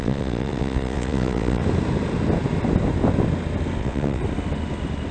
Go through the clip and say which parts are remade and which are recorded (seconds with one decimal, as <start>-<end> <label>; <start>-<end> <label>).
0.0-1.6 remade; 1.6-3.8 recorded; 3.8-4.2 remade; 4.2-5.1 recorded